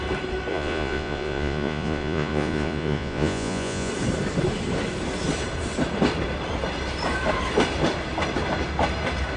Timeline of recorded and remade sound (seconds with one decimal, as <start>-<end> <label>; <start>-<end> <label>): 0.0-0.5 recorded; 0.5-3.9 remade; 3.9-9.4 recorded